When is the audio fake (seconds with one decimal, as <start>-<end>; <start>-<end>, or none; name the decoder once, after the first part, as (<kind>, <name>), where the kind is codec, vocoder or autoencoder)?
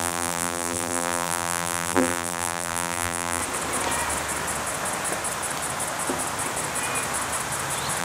0.0-3.4 (vocoder, BigVGAN v2)